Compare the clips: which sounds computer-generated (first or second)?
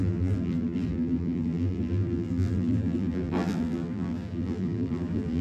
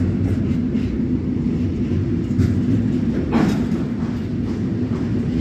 first